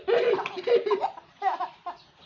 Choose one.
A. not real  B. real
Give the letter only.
B